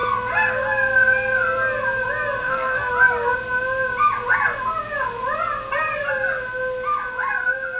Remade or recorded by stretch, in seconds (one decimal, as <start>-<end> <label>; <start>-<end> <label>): 0.0-2.4 recorded; 2.4-2.9 remade; 2.9-7.8 recorded